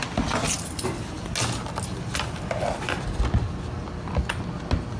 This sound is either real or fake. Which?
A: real